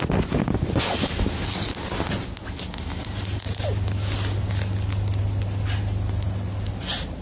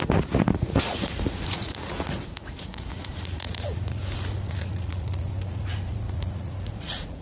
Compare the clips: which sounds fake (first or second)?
second